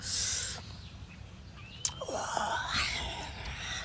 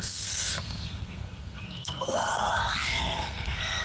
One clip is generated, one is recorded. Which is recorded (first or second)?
first